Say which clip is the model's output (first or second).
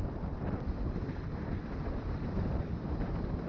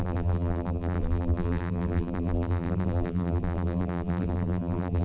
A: second